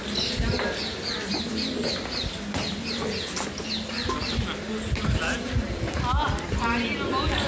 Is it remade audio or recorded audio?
recorded